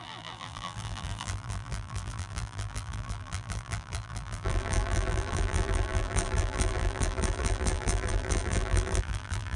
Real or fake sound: fake